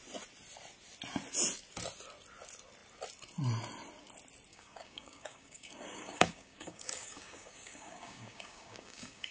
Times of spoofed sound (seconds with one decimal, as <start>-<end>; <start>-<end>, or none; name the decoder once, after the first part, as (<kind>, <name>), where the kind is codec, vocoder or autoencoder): 4.5-9.3 (codec, DAC)